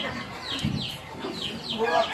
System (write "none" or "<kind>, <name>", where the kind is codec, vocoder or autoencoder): none